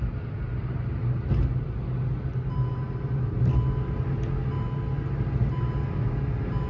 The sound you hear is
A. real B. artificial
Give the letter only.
A